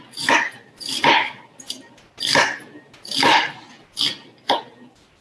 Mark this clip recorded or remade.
recorded